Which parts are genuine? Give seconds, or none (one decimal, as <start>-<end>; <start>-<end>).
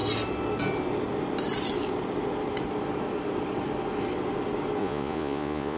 0.0-4.8